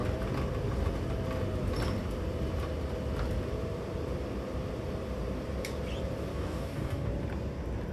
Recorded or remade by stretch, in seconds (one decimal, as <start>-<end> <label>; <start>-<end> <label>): 0.0-6.3 recorded; 6.3-7.1 remade; 7.1-7.9 recorded